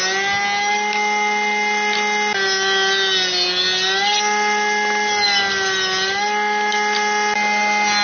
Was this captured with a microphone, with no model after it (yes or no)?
yes